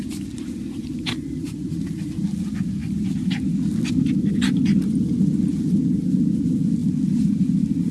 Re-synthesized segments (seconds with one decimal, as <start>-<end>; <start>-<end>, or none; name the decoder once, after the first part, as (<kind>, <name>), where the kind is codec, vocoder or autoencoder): none